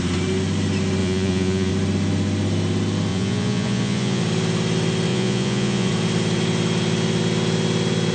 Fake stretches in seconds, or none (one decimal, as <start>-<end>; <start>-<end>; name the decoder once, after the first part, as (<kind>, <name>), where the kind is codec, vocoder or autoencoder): 1.0-1.7 (vocoder, Vocos); 3.1-4.2; 5.1-5.9